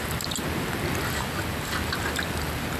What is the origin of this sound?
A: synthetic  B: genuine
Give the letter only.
B